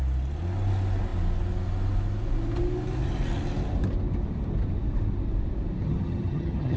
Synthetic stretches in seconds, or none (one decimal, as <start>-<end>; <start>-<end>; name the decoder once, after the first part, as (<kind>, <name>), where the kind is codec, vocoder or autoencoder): 5.8-6.8 (vocoder, HiFi-GAN)